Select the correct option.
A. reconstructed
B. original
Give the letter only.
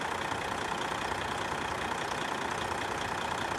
B